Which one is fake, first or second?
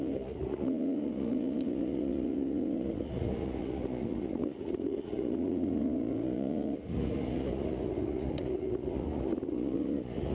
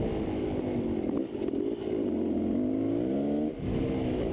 first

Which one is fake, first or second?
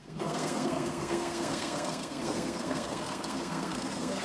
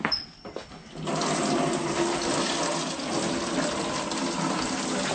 first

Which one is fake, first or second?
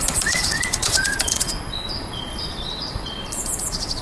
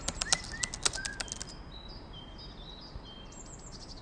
first